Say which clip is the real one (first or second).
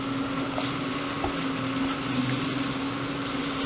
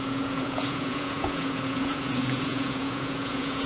first